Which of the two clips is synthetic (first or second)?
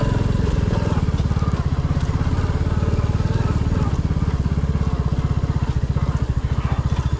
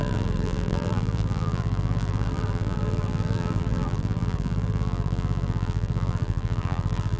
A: second